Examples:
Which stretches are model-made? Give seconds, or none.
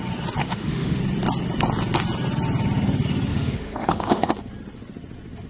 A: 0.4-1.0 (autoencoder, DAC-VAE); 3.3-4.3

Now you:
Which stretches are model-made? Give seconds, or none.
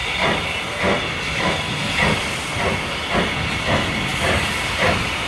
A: none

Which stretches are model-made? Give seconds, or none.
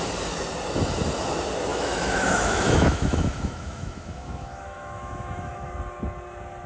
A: 1.7-5.7 (autoencoder, DAC-VAE)